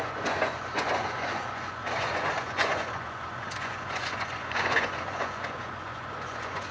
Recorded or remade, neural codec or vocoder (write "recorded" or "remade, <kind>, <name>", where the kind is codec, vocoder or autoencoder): remade, vocoder, Vocos